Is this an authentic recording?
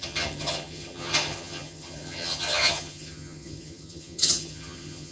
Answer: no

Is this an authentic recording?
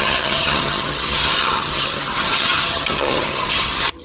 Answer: no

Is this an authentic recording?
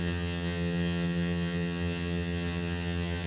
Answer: no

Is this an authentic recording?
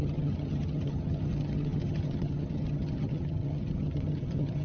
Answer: no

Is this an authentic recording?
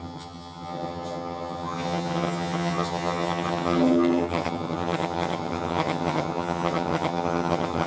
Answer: no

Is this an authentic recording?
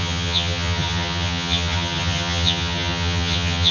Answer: no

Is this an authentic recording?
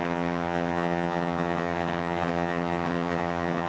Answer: no